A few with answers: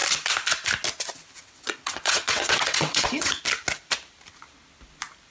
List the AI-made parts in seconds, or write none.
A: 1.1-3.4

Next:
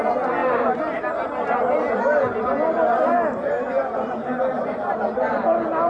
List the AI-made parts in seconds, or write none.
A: 0.4-2.4; 3.8-4.9

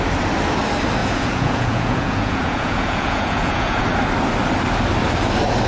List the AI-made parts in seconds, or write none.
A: 1.0-3.8

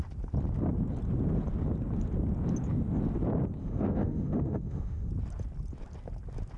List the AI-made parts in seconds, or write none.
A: 3.6-5.1

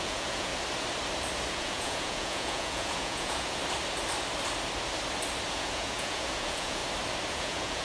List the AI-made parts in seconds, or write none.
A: 0.0-0.5; 1.5-3.6; 5.5-6.8; 7.3-7.8

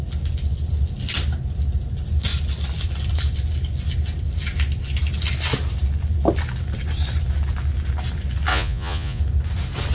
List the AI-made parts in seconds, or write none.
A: 8.5-9.2

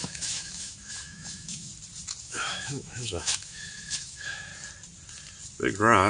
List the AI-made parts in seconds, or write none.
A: 0.0-1.7; 2.2-4.5

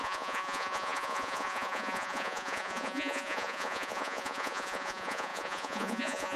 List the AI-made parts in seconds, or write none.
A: 0.0-6.4